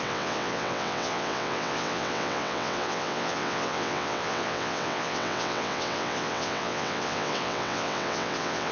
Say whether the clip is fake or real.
fake